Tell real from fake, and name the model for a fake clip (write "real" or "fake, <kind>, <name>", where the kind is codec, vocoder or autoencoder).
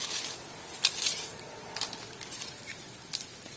real